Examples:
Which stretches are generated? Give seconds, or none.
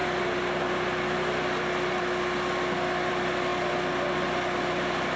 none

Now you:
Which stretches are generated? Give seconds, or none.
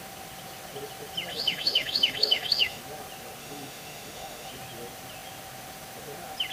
1.3-2.8 (autoencoder, DAC-VAE); 3.4-4.5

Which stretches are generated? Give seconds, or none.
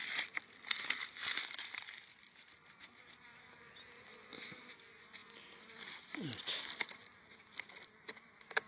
none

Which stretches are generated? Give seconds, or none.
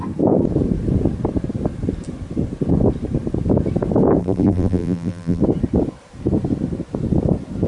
4.2-5.4 (vocoder, BigVGAN v2)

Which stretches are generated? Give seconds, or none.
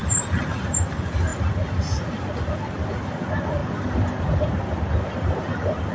none